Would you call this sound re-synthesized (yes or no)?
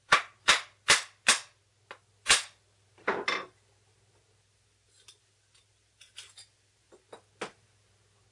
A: no